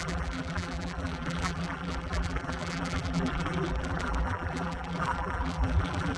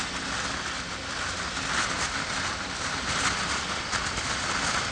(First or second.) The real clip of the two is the second